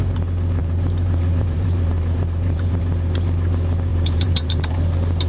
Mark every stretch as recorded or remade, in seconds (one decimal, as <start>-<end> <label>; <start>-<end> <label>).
0.0-0.6 recorded; 0.6-2.8 remade; 2.8-3.9 recorded; 3.9-4.8 remade; 4.8-5.3 recorded